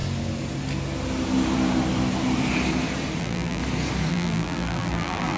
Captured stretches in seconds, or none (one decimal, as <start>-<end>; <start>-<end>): 0.0-3.2; 3.6-4.1

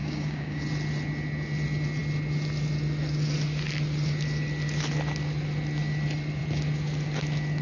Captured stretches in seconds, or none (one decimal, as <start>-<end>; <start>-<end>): 0.6-7.6